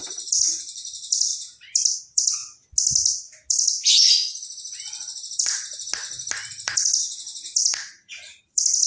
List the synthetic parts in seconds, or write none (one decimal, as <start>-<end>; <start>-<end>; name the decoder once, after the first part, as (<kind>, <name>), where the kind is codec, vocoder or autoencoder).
0.0-1.3 (vocoder, BigVGAN v2); 2.0-2.4; 3.5-4.2; 4.8-5.6; 6.5-8.9